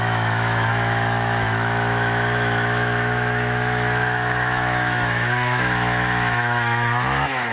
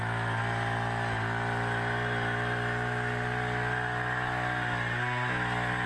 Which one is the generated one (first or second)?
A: first